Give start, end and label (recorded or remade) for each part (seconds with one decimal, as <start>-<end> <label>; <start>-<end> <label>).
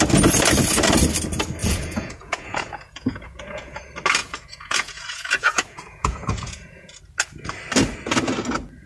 0.0-1.6 recorded; 1.6-3.8 remade; 3.8-4.2 recorded; 4.2-7.0 remade; 7.0-8.9 recorded